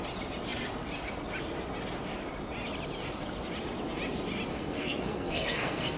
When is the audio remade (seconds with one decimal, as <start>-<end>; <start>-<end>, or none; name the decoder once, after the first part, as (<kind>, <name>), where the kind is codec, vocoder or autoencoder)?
4.5-6.0 (codec, SNAC)